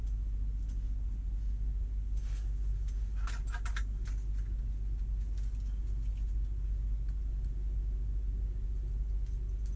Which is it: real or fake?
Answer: real